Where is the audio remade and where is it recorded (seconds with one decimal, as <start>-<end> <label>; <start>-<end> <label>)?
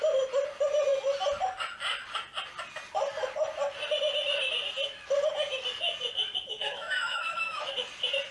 0.0-6.5 recorded; 6.5-7.7 remade; 7.7-8.3 recorded